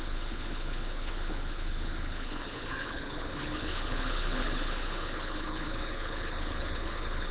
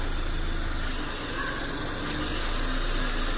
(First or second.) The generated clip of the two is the first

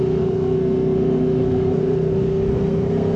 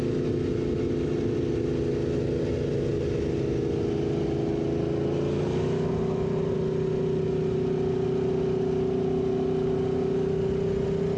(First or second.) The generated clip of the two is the first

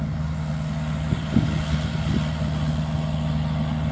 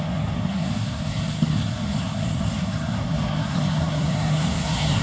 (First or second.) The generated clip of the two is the second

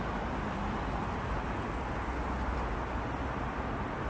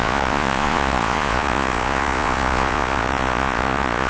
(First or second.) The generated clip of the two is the second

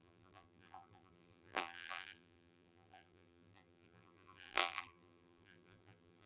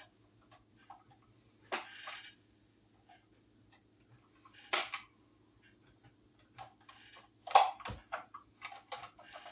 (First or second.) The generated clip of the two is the first